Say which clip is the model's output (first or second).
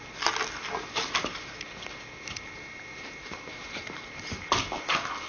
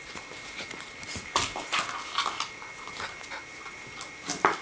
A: second